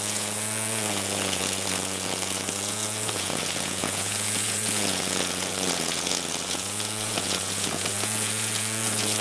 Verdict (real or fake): fake